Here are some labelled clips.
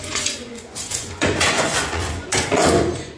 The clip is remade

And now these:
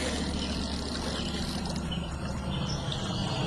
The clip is recorded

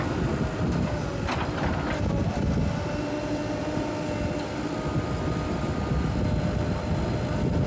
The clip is recorded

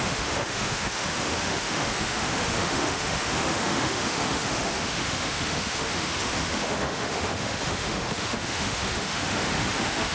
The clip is remade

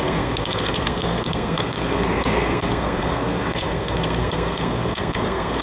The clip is remade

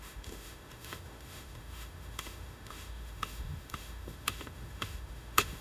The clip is remade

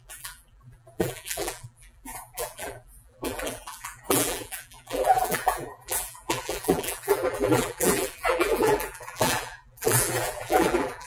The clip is remade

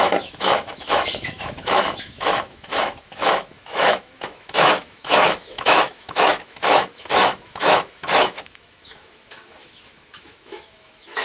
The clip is remade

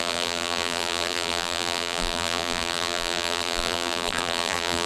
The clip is remade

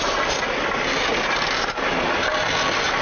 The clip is recorded